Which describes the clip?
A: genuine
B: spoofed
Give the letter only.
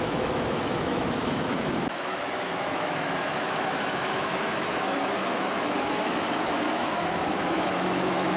B